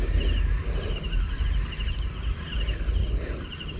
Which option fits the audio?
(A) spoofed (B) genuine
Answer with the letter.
B